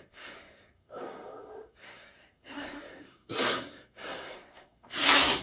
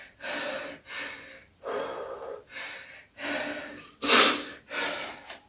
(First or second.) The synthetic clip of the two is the first